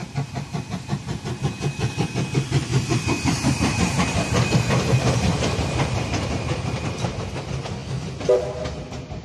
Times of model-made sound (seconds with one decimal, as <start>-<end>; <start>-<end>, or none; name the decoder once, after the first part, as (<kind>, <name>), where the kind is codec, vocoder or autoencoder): 0.0-1.2 (vocoder, BigVGAN v2); 2.7-7.3